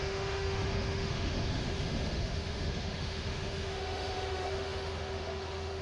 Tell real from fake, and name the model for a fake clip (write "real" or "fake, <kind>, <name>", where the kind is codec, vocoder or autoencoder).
fake, autoencoder, DAC-VAE